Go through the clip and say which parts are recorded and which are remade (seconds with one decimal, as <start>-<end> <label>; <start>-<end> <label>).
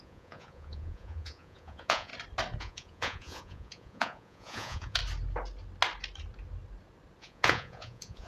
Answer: 0.0-2.1 remade; 2.1-2.6 recorded; 2.6-5.0 remade; 5.0-7.2 recorded; 7.2-8.3 remade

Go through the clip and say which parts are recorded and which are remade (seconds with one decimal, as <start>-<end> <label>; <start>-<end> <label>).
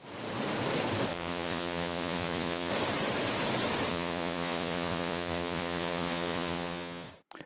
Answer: 0.0-1.1 recorded; 1.1-2.7 remade; 2.7-3.9 recorded; 3.9-7.1 remade; 7.1-7.5 recorded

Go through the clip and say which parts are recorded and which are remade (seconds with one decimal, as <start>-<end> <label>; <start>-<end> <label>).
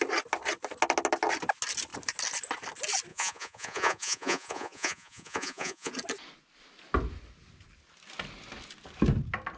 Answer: 0.0-3.1 recorded; 3.1-5.9 remade; 5.9-9.6 recorded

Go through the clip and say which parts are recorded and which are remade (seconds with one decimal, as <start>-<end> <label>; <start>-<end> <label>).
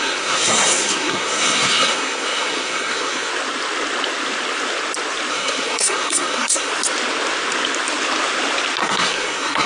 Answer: 0.0-3.3 remade; 3.3-5.3 recorded; 5.3-6.7 remade; 6.7-8.8 recorded; 8.8-9.7 remade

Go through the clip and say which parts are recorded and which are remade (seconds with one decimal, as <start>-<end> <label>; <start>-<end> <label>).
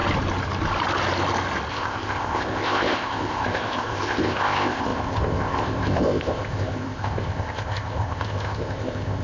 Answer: 0.0-1.7 recorded; 1.7-9.2 remade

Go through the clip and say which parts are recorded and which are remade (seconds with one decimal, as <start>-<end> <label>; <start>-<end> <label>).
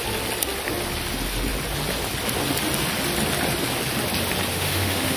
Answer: 0.0-4.5 recorded; 4.5-5.2 remade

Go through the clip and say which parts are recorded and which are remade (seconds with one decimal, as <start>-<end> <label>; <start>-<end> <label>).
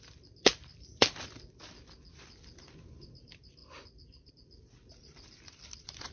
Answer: 0.0-6.1 remade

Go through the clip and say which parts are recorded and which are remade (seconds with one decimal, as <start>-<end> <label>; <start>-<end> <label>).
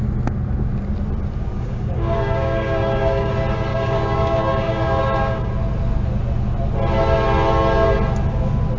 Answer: 0.0-1.5 recorded; 1.5-3.3 remade; 3.3-3.7 recorded; 3.7-5.5 remade; 5.5-8.8 recorded